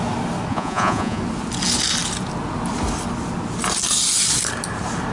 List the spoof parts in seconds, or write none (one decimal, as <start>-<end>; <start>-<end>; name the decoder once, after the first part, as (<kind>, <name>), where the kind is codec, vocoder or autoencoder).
0.5-1.2 (vocoder, Vocos)